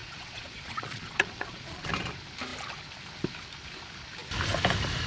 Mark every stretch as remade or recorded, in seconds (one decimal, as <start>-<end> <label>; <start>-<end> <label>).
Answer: 0.0-1.9 remade; 1.9-5.1 recorded